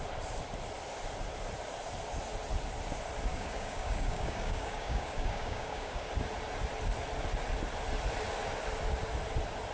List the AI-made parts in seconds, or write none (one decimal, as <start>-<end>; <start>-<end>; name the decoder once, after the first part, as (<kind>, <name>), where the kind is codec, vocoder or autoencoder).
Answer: 3.3-6.1 (codec, DAC)